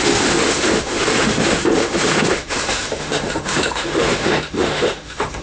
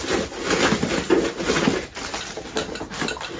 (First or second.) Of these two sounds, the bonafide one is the second